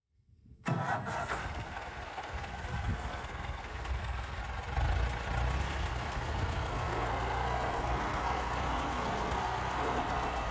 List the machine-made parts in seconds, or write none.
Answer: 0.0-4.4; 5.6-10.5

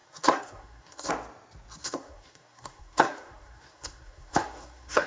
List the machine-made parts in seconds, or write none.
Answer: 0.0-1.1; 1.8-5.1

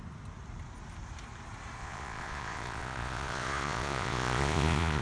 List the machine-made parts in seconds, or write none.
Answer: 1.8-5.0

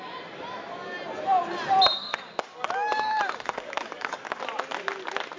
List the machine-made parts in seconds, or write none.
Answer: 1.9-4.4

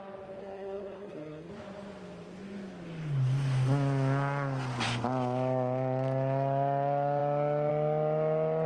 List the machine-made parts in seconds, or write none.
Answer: 0.4-1.5